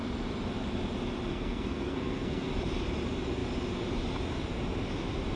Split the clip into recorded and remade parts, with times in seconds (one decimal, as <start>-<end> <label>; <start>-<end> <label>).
0.0-1.3 recorded; 1.3-2.5 remade; 2.5-5.4 recorded